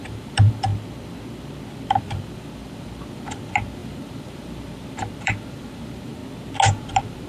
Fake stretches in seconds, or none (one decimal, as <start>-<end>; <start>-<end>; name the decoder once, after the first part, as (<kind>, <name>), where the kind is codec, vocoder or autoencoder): 0.0-0.7 (vocoder, BigVGAN v2); 2.0-6.2; 6.8-7.3